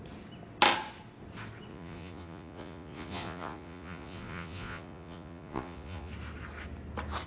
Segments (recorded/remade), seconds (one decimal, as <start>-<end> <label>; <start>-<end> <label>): 0.0-1.7 recorded; 1.7-6.1 remade; 6.1-7.3 recorded